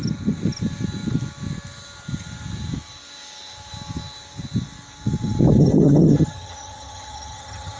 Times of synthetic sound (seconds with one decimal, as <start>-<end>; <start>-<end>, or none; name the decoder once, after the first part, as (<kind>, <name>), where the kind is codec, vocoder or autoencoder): 5.6-7.8 (vocoder, HiFi-GAN)